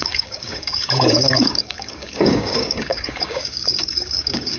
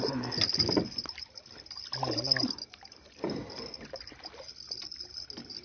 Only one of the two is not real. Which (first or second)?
first